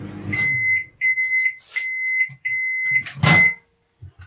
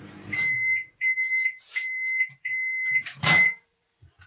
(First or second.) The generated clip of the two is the second